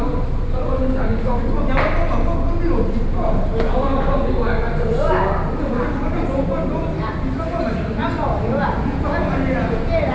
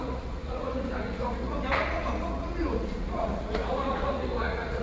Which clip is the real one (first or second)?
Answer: first